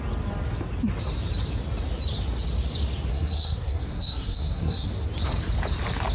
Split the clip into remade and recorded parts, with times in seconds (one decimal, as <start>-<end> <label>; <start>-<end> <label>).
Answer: 0.0-3.1 recorded; 3.1-4.9 remade; 4.9-6.1 recorded